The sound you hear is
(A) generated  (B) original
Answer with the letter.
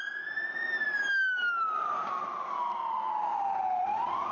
B